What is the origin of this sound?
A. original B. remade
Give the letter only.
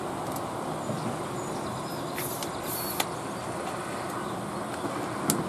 A